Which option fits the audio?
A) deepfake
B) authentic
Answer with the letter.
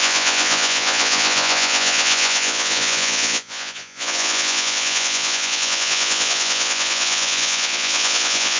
A